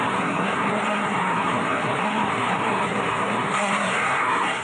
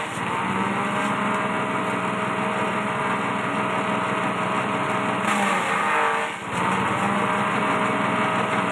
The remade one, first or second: first